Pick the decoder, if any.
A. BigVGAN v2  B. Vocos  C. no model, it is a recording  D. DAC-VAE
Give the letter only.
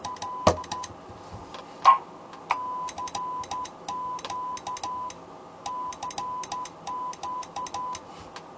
C